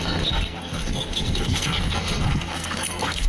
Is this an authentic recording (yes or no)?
no